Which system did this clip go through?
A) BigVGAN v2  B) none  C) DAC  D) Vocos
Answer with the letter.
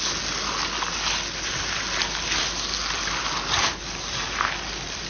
B